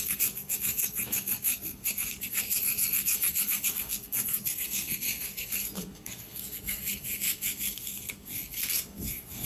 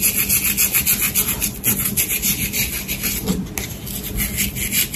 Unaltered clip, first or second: second